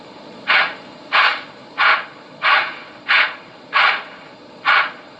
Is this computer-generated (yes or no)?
yes